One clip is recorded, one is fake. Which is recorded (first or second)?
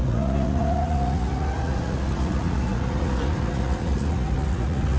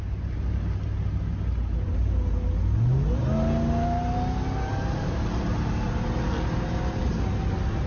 second